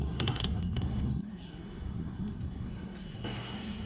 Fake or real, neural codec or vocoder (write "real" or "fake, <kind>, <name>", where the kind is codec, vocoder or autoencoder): fake, codec, SNAC